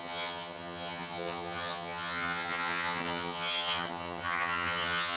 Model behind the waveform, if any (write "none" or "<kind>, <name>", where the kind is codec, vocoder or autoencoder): vocoder, HiFi-GAN